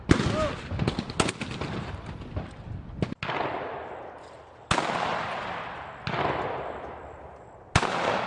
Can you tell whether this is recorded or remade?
recorded